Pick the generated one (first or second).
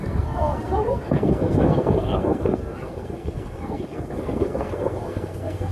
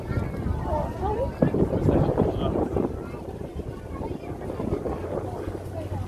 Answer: first